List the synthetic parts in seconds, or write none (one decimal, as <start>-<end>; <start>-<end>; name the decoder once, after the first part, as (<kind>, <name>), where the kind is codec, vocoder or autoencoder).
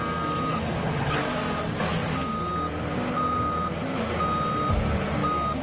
0.5-1.2 (codec, HILCodec)